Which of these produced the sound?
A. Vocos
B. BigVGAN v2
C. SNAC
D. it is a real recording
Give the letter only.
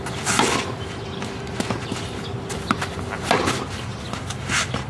D